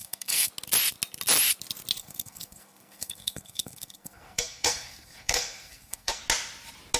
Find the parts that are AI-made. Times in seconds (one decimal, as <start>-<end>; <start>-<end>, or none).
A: 0.0-0.5; 2.0-6.2